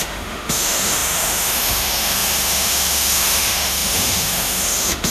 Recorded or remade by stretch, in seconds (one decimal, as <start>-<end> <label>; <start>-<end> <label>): 0.0-5.1 remade